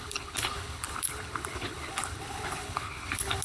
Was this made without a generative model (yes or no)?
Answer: no